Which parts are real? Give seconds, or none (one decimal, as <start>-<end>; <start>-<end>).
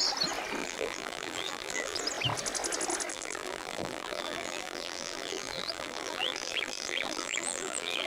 0.0-0.6; 2.0-3.1